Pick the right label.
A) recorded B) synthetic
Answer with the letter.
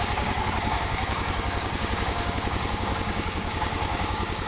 B